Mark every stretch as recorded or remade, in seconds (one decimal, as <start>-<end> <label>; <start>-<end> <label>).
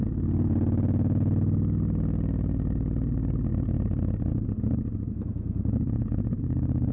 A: 0.0-5.3 recorded; 5.3-6.9 remade